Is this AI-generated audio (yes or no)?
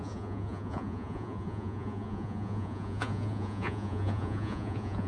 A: yes